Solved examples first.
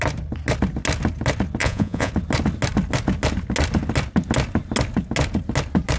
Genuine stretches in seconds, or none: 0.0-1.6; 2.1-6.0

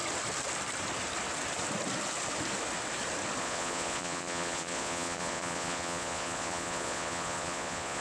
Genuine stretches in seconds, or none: 0.0-3.4

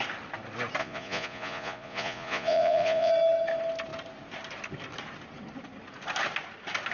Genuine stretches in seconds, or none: 0.0-0.8; 3.1-6.9

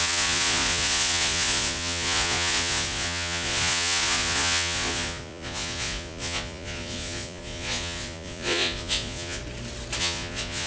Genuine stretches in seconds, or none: 9.4-10.0

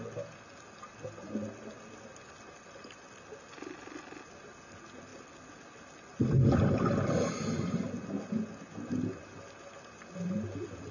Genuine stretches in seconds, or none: 0.0-10.9

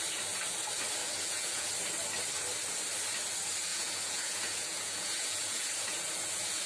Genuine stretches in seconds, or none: 0.0-1.0; 1.7-3.7

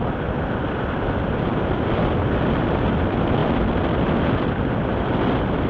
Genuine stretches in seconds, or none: 0.0-5.7